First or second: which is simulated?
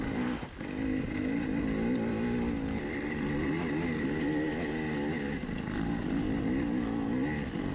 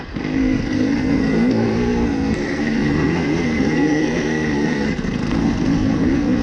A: second